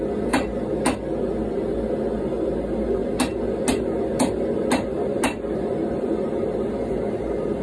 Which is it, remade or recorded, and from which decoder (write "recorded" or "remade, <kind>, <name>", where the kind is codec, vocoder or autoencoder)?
recorded